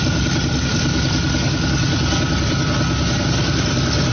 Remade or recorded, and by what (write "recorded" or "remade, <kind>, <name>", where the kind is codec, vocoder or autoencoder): recorded